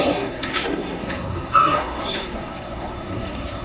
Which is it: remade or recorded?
remade